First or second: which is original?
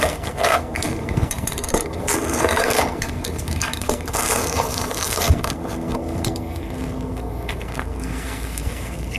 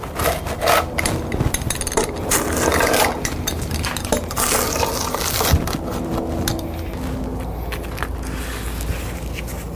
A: second